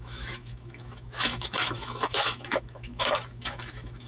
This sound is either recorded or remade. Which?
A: remade